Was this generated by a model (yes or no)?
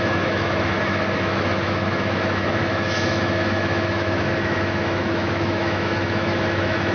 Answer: yes